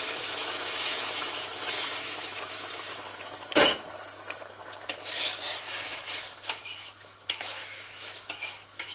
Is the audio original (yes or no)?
no